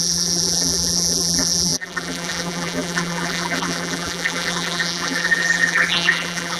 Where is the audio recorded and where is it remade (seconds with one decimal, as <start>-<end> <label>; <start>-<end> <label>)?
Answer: 0.0-6.6 remade